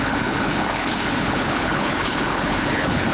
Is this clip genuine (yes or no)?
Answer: no